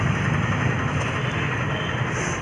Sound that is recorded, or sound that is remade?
recorded